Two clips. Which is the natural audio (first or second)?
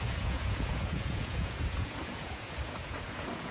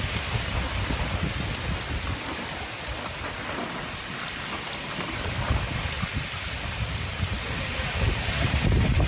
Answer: second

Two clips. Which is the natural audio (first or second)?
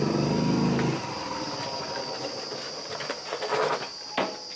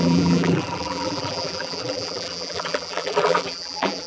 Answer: first